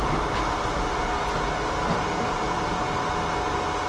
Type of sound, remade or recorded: recorded